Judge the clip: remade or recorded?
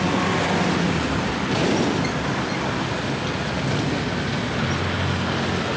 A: recorded